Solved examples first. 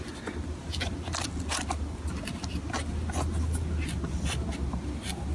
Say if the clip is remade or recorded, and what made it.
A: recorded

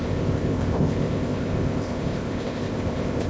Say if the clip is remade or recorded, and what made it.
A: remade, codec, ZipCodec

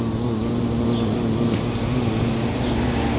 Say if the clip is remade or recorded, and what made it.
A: recorded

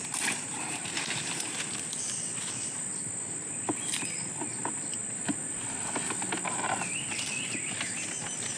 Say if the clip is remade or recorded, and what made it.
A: recorded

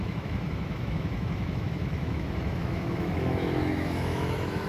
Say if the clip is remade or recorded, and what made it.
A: remade, autoencoder, DAC-VAE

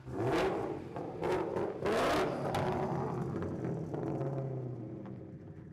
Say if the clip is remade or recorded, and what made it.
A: recorded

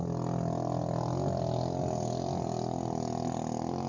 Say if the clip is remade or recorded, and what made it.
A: recorded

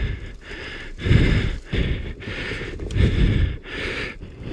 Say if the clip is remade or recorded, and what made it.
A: recorded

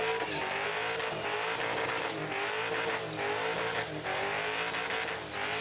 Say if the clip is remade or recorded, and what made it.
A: recorded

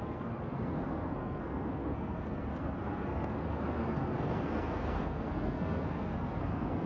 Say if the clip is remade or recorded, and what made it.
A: remade, codec, SNAC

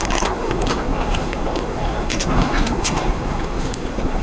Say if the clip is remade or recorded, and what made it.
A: remade, codec, SNAC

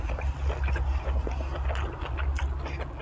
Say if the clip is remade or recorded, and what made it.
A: recorded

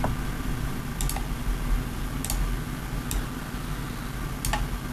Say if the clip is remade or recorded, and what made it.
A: recorded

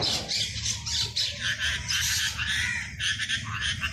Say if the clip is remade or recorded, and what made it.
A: recorded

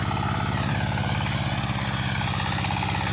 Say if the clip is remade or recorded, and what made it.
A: recorded